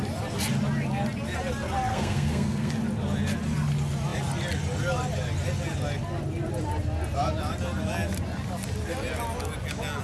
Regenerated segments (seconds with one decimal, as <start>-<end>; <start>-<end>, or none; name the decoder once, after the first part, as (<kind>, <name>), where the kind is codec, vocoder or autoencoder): 1.9-2.7 (codec, SNAC)